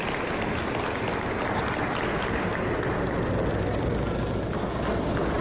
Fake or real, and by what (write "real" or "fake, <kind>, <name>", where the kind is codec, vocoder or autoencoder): real